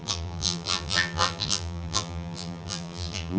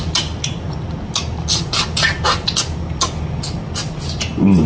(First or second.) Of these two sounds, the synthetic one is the first